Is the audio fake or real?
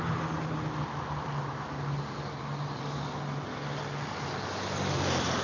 real